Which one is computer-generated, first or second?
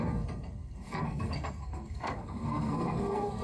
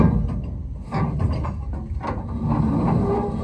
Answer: first